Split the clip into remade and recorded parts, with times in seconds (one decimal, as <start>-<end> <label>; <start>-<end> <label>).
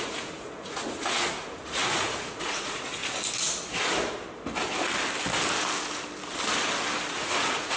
0.0-3.0 remade; 3.0-7.1 recorded; 7.1-7.8 remade